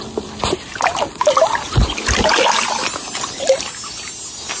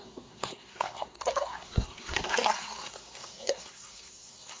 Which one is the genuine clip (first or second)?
first